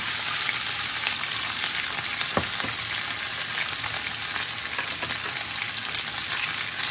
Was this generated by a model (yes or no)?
no